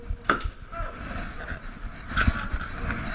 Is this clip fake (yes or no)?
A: no